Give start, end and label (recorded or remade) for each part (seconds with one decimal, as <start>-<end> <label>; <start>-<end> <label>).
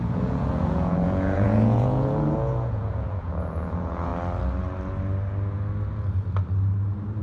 0.0-4.1 remade; 4.1-7.2 recorded